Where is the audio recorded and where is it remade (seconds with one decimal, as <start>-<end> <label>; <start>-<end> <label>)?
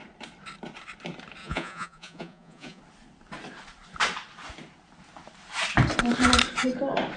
0.0-1.4 recorded; 1.4-2.8 remade; 2.8-7.2 recorded